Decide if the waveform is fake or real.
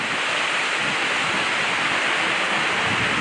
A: real